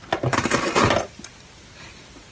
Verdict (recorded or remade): recorded